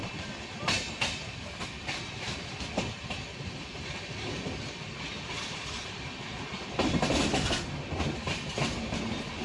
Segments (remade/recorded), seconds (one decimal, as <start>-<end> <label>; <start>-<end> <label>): 0.0-9.4 recorded